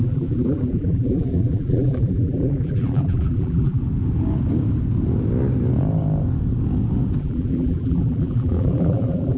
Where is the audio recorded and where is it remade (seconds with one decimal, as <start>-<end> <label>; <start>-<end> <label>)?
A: 0.0-3.8 remade; 3.8-7.2 recorded; 7.2-9.4 remade